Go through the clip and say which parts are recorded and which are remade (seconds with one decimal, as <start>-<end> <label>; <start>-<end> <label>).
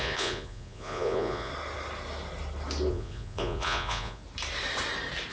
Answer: 0.0-1.5 remade; 1.5-2.9 recorded; 2.9-4.2 remade; 4.2-5.3 recorded